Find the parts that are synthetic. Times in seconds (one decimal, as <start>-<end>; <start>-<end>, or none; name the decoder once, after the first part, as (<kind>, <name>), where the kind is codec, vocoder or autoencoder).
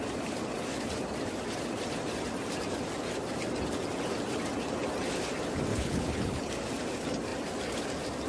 5.7-6.5 (codec, HILCodec)